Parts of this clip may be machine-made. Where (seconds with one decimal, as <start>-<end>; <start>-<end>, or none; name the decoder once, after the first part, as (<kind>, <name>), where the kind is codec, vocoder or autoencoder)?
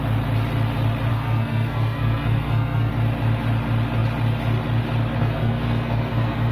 1.1-2.9 (codec, SNAC); 5.2-6.5